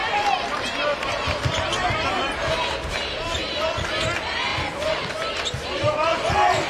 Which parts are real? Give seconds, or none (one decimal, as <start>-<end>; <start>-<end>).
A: 3.6-4.5; 5.1-6.7